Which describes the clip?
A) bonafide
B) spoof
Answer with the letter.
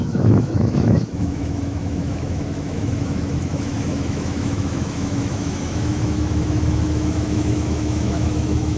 B